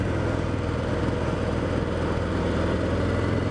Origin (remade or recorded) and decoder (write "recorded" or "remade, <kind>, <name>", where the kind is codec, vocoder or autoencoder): recorded